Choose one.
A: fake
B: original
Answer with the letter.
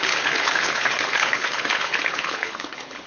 A